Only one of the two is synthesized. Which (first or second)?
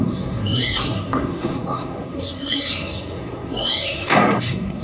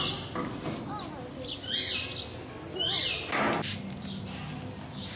first